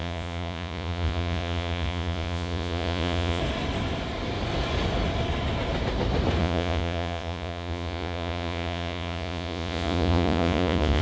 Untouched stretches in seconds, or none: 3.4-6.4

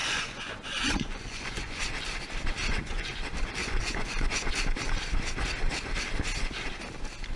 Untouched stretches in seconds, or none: 1.8-2.7; 3.2-3.6; 4.5-7.4

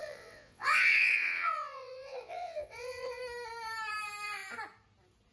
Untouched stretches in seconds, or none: 3.2-5.3

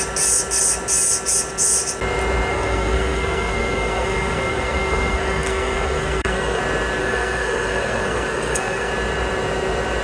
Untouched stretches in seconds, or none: 0.0-2.5; 6.6-7.0; 8.9-10.0